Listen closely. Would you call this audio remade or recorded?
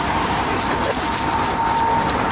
remade